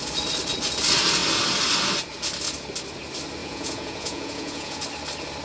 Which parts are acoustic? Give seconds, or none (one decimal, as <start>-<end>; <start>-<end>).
0.0-3.4; 4.8-5.4